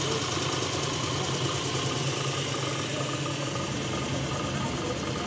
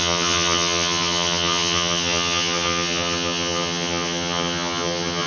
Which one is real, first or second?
first